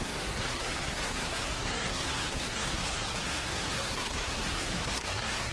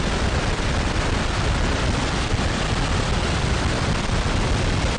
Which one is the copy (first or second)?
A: first